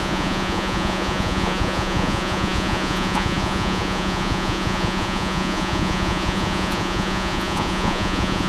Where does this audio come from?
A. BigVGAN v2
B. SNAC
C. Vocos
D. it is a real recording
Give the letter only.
C